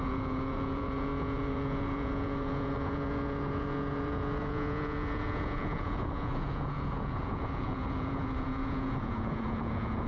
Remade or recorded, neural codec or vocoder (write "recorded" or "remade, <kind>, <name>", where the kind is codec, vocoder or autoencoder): remade, vocoder, Vocos